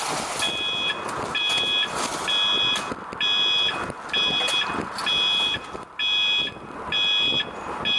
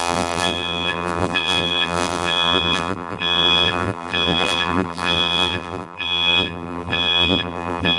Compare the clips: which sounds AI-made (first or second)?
second